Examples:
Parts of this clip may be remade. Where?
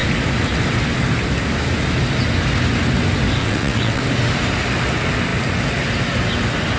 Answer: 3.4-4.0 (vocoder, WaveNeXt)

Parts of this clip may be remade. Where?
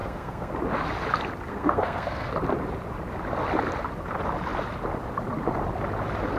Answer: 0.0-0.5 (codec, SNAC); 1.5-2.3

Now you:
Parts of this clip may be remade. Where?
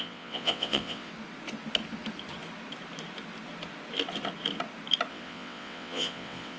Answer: 0.0-1.1 (vocoder, WaveNeXt); 5.1-6.6